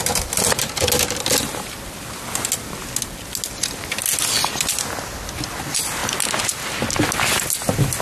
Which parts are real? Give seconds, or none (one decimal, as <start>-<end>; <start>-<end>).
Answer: 0.0-8.0